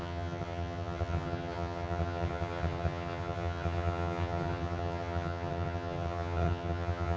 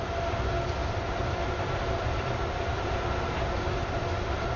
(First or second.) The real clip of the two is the second